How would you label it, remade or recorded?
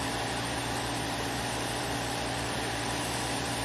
remade